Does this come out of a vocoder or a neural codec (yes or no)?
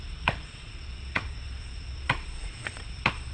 yes